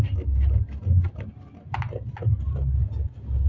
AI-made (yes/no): no